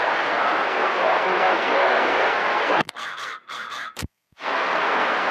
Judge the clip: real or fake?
fake